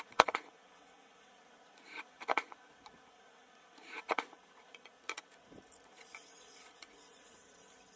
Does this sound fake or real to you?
fake